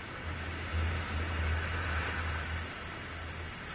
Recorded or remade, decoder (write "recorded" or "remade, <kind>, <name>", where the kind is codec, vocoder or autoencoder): recorded